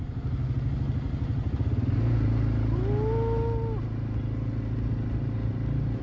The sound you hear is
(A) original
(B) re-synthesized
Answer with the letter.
A